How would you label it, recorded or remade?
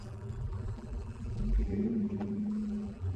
remade